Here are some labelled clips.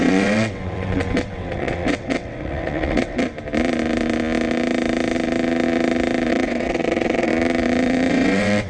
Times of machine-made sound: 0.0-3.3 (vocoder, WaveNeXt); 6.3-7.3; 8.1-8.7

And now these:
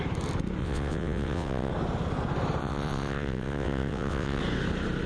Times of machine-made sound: 0.6-1.7 (vocoder, WaveNeXt); 2.6-4.4

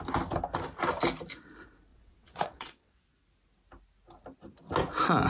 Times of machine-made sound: 1.9-3.1 (vocoder, WaveNeXt)

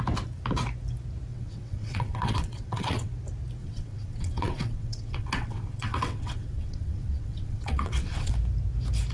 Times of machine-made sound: 1.3-3.1 (vocoder, WaveNeXt); 3.6-8.3

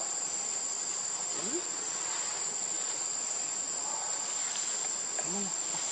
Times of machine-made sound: 1.6-2.2 (vocoder, WaveNeXt)

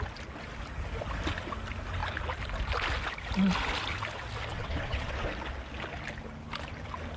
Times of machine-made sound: 4.5-5.3 (vocoder, WaveNeXt)

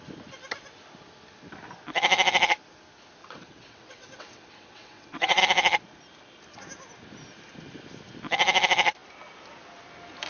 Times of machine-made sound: 3.2-5.4 (vocoder, WaveNeXt)

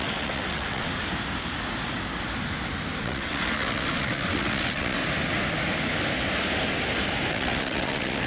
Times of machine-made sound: 0.0-0.9 (vocoder, WaveNeXt); 3.0-5.0; 7.3-8.3